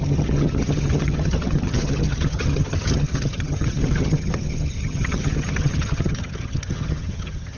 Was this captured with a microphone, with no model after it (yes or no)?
no